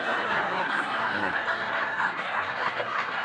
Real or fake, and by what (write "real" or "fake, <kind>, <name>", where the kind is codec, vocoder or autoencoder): fake, codec, SNAC